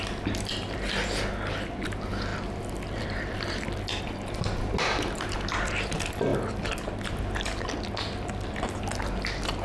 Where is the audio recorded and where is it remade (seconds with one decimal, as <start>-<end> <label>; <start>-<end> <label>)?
0.0-2.3 recorded; 2.3-4.0 remade; 4.0-9.6 recorded